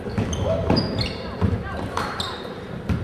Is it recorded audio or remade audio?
remade